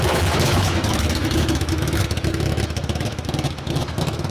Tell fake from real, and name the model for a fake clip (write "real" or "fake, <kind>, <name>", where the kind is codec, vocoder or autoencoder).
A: fake, autoencoder, DAC-VAE